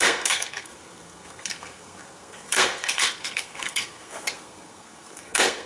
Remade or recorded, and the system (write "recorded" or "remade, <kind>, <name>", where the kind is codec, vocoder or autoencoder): remade, codec, SNAC